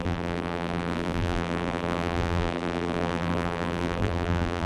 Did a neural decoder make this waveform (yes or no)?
yes